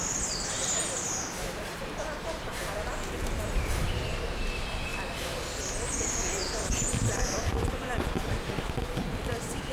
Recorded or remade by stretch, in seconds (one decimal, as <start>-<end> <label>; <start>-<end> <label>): 0.0-4.9 remade; 4.9-9.7 recorded

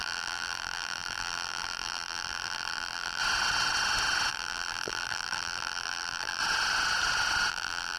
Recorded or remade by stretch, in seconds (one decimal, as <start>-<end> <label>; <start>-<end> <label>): 0.0-3.2 remade; 3.2-4.3 recorded; 4.3-6.4 remade; 6.4-7.5 recorded; 7.5-8.0 remade